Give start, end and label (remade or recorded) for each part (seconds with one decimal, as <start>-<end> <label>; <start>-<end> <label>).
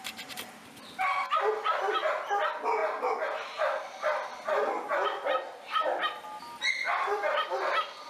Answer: 0.0-8.1 recorded